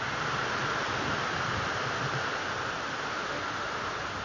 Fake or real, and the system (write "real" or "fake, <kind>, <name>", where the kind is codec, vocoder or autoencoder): real